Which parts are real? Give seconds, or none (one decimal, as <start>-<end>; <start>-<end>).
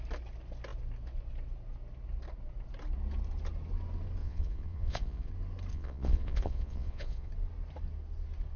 0.0-4.2; 5.3-5.7; 7.3-8.6